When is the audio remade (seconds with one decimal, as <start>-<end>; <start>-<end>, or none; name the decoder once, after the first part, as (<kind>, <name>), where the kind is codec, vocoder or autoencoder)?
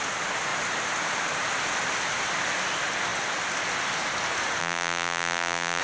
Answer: 4.6-5.8 (vocoder, BigVGAN v2)